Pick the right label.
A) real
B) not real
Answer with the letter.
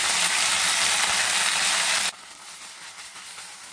B